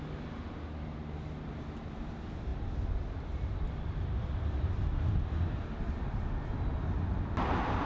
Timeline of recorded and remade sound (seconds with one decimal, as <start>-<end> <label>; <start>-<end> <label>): 0.0-7.9 recorded